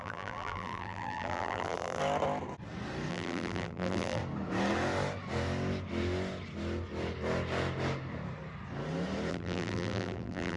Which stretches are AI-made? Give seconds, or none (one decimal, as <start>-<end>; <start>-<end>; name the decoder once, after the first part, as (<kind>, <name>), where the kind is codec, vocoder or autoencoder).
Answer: 0.0-2.0 (vocoder, BigVGAN v2); 3.1-4.2; 9.3-10.6